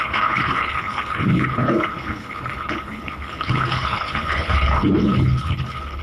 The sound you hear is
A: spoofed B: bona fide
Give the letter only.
A